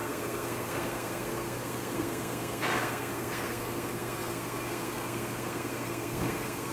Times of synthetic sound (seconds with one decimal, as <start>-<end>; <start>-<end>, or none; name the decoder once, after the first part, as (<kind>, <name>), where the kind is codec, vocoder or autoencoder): 0.0-6.7 (codec, SNAC)